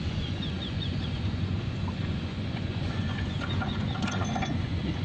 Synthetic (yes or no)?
yes